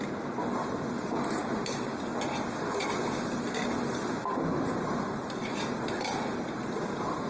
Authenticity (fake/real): real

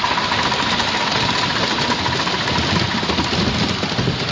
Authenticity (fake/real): real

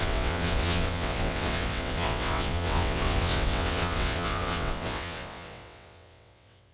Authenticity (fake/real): fake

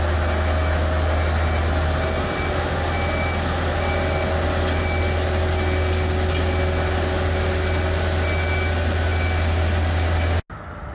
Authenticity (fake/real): real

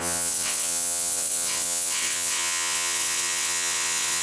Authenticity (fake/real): fake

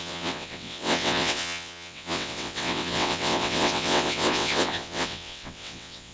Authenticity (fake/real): fake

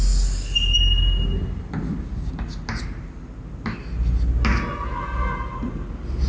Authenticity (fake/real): real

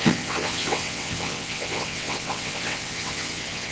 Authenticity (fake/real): fake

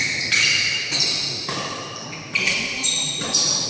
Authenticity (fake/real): real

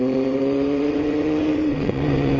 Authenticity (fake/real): fake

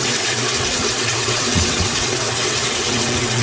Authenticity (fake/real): fake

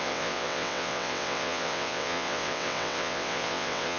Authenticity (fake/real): fake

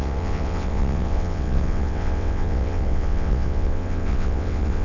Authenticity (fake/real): fake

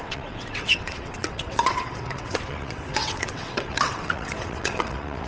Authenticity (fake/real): fake